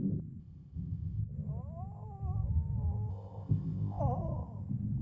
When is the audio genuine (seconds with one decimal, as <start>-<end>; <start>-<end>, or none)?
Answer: 0.0-0.4; 1.2-3.1; 4.0-5.0